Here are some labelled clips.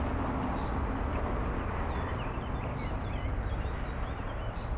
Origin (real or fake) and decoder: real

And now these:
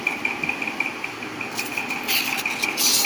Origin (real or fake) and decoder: real